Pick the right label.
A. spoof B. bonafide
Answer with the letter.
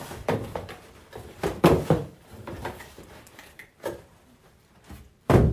A